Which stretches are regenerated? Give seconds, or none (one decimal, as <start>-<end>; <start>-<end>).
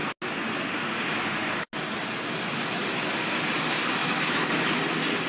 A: 4.0-4.5